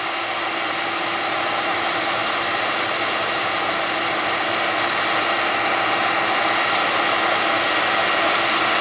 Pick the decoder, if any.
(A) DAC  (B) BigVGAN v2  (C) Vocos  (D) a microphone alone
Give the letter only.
D